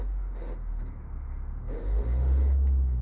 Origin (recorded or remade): remade